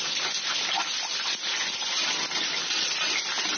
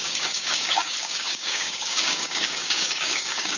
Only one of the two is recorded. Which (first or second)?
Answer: first